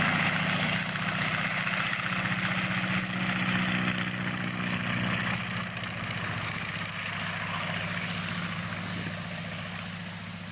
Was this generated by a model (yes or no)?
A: no